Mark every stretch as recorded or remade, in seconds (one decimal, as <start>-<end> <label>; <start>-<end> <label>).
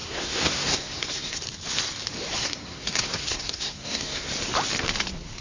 0.0-1.4 remade; 1.4-2.4 recorded; 2.4-4.3 remade; 4.3-5.4 recorded